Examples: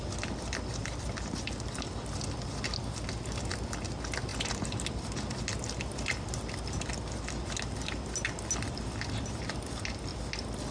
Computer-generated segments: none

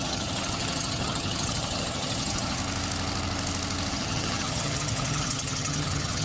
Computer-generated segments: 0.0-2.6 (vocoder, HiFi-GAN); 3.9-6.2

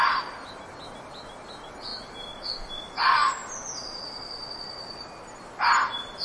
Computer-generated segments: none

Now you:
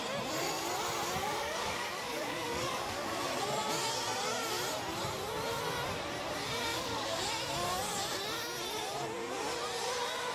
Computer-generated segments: 1.2-3.2 (codec, DAC); 6.7-7.2

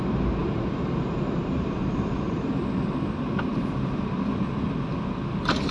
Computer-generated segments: 0.4-2.9 (vocoder, BigVGAN v2); 3.5-4.1

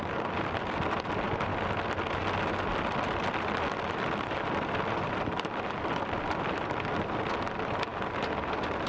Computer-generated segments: none

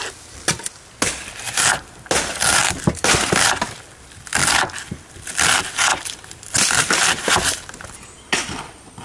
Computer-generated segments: none